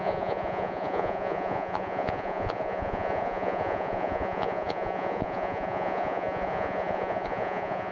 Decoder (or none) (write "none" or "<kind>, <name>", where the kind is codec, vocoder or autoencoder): vocoder, Vocos